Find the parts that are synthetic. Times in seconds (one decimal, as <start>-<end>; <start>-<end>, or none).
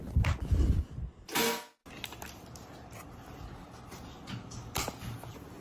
none